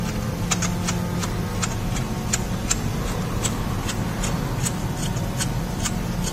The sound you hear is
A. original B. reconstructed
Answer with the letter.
A